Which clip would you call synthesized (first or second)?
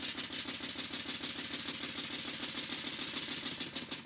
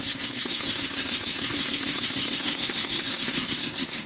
second